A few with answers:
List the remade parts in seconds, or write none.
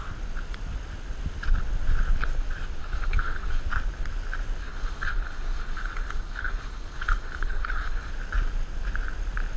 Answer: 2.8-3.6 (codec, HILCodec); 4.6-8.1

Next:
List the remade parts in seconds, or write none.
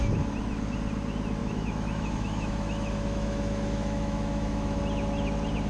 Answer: 1.4-4.8 (autoencoder, DAC-VAE)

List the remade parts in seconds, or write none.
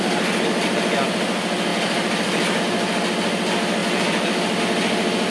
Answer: 1.7-2.6 (vocoder, BigVGAN v2); 3.8-4.6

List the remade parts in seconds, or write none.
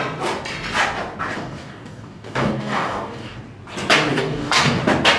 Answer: 1.3-3.4 (codec, DAC); 4.1-4.8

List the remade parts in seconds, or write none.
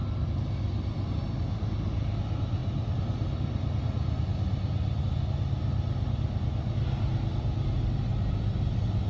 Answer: none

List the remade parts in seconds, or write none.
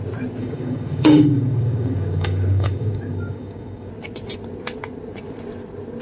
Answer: 0.4-3.9 (codec, DAC)